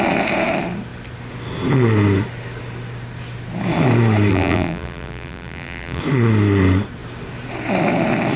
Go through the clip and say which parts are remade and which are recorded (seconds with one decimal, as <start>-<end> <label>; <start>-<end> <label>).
0.0-4.3 recorded; 4.3-6.0 remade; 6.0-8.4 recorded